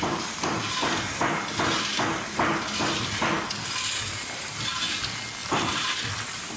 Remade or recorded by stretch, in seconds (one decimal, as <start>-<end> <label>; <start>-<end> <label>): 0.0-5.4 recorded; 5.4-6.6 remade